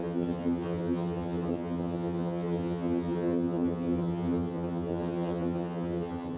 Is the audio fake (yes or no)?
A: yes